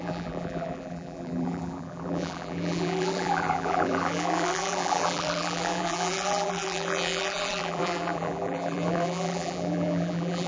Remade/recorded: remade